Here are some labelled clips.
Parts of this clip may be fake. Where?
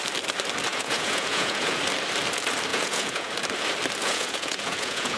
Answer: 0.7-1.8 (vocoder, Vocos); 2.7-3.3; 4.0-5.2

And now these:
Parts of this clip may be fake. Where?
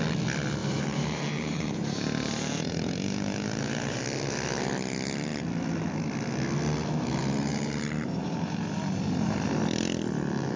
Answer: 0.6-4.0 (vocoder, BigVGAN v2); 7.2-8.8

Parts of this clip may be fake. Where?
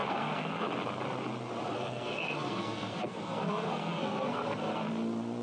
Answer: 0.0-0.7 (codec, SNAC); 1.7-4.9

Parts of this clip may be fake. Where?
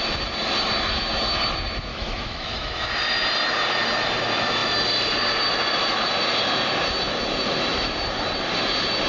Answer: 1.9-2.9 (autoencoder, DAC-VAE)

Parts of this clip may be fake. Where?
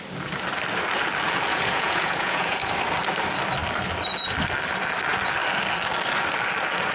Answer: 1.5-2.7 (vocoder, Vocos)